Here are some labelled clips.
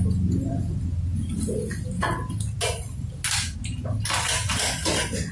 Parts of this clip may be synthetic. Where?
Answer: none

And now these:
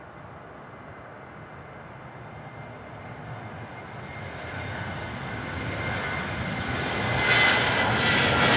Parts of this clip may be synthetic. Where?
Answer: 4.1-6.9 (vocoder, BigVGAN v2)

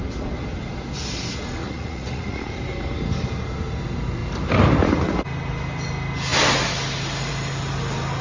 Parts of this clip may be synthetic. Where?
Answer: 1.6-2.4 (vocoder, Vocos)

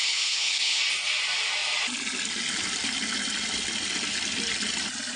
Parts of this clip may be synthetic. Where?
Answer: 0.0-0.8 (codec, HILCodec)

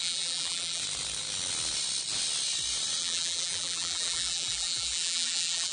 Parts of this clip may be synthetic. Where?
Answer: 0.0-0.8 (vocoder, BigVGAN v2); 3.0-5.7

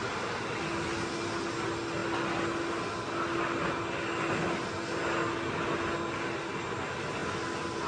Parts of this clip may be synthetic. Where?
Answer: none